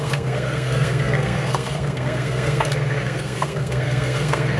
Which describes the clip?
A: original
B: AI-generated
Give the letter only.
B